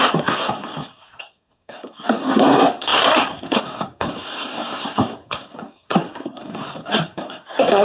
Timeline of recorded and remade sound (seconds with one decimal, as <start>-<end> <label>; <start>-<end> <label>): 0.0-7.8 remade